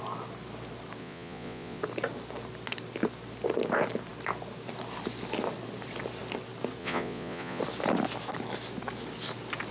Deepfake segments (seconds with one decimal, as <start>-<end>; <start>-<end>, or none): 1.0-1.8; 6.8-7.6